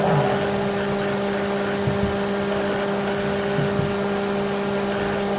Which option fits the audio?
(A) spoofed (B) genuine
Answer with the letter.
B